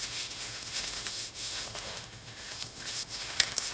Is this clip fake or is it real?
fake